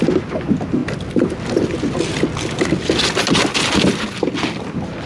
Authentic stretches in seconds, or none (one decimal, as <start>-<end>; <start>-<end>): 0.0-5.1